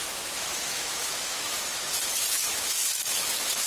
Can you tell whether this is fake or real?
fake